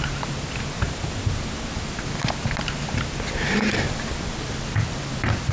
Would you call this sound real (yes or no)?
yes